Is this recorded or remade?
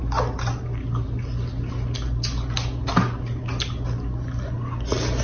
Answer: recorded